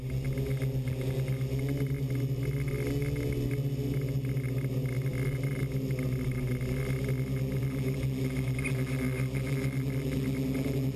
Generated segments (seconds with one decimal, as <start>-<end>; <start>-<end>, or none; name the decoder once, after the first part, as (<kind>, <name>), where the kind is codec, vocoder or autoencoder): none